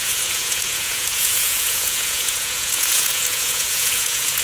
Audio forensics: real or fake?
fake